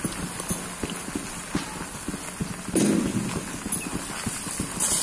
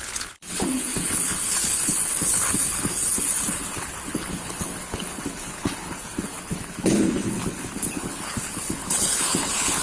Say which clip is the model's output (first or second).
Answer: second